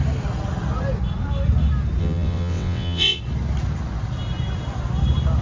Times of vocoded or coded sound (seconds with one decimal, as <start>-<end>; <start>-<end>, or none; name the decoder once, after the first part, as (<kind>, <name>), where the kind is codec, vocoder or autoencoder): 2.0-3.2 (vocoder, WaveNeXt)